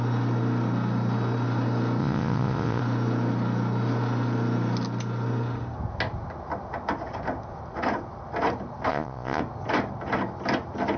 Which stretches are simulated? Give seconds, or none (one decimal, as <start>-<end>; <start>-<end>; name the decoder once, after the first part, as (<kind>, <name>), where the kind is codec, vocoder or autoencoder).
2.0-2.8 (vocoder, Vocos); 8.9-9.4